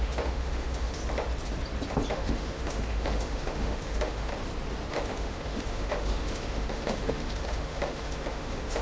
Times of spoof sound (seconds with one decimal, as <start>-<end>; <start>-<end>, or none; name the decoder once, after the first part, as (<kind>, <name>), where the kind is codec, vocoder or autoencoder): 0.0-1.0 (autoencoder, DAC-VAE); 2.1-4.3; 4.9-8.8